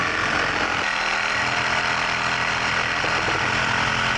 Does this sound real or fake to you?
real